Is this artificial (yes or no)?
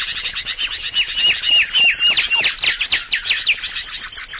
no